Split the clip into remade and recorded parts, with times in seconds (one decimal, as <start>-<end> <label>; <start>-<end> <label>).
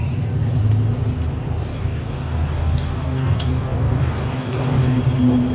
0.0-1.7 recorded; 1.7-5.0 remade; 5.0-5.5 recorded